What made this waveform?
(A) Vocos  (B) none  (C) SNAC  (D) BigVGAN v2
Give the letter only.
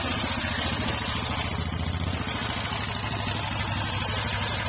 B